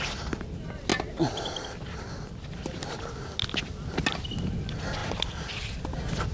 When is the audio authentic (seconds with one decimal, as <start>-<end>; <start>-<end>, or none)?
0.0-6.3